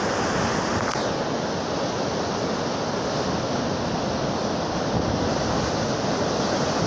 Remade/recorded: recorded